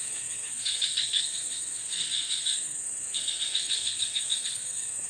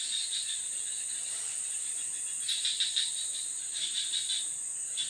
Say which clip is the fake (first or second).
first